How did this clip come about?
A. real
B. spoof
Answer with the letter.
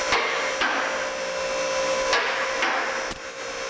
A